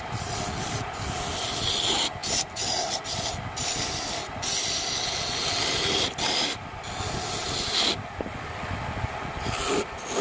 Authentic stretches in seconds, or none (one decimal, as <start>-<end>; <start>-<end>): 0.0-10.2